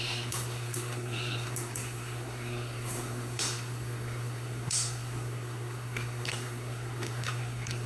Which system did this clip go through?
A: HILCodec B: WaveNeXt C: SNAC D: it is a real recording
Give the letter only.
C